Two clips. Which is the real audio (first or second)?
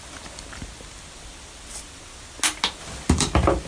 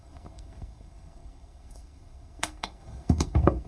first